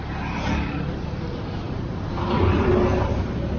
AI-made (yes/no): no